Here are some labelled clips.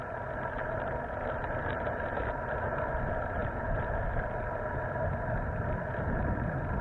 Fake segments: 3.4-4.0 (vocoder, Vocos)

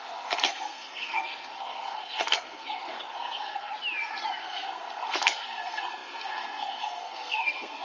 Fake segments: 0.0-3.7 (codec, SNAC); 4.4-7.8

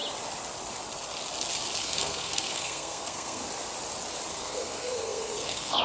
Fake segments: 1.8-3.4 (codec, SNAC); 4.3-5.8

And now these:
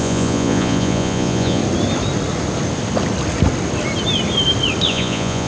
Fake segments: 0.0-1.6 (vocoder, Vocos); 4.9-5.5